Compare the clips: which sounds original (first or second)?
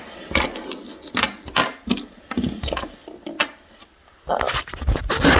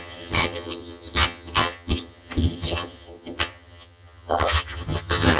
first